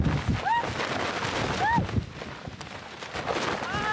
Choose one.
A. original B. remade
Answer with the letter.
A